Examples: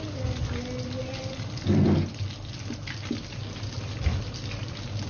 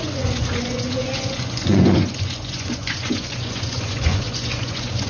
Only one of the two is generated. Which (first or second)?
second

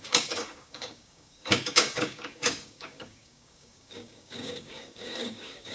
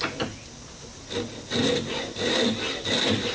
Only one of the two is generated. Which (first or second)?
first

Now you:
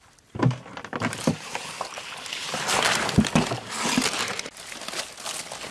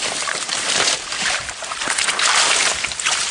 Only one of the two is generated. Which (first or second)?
second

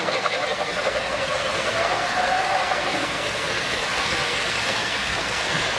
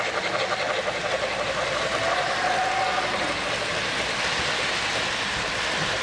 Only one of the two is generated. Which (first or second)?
first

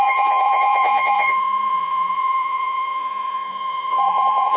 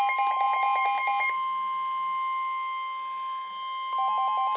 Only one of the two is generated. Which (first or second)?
first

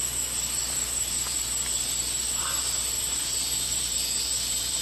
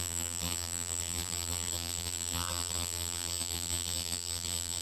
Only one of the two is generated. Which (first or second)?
second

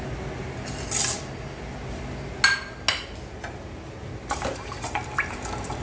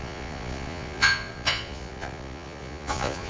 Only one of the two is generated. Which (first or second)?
second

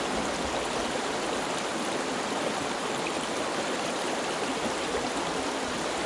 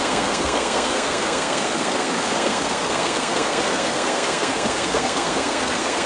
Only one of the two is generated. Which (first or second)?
second